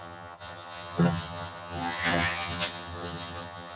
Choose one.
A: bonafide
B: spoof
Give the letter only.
B